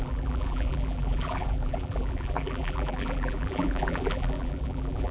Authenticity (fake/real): fake